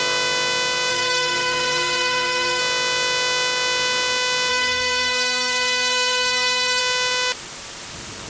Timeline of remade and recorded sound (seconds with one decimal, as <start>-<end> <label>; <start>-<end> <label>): 0.0-0.9 recorded; 0.9-2.6 remade; 2.6-4.5 recorded; 4.5-6.8 remade; 6.8-8.3 recorded